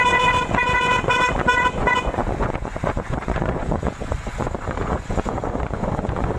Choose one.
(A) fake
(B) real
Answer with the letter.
A